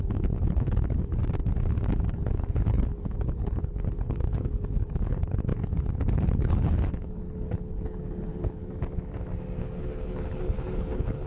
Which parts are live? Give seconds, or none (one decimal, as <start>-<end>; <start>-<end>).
1.2-2.1; 8.6-9.6